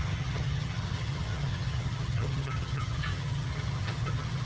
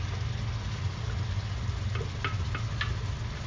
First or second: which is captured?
second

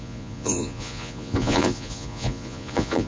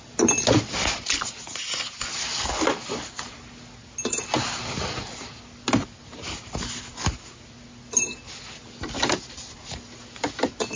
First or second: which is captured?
second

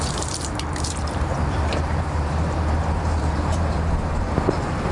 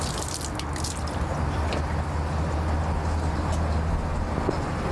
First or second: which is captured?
second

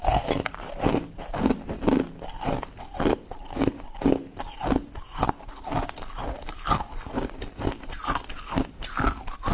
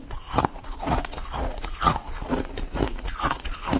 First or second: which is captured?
first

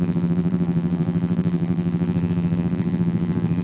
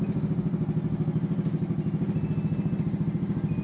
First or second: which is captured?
second